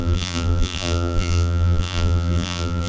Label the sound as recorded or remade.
remade